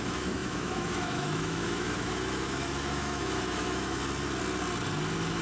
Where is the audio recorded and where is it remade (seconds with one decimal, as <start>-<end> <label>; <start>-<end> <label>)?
0.0-4.0 remade; 4.0-5.4 recorded